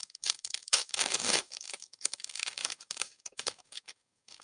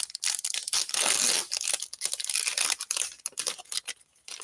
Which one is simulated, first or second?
first